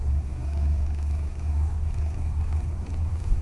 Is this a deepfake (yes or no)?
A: yes